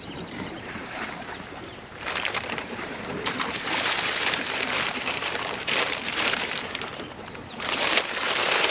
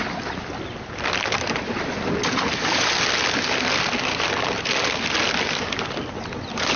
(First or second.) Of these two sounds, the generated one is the first